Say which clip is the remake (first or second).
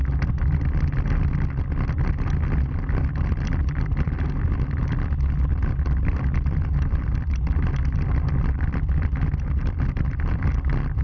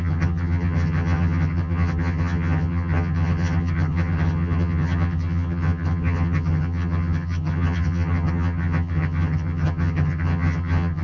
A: second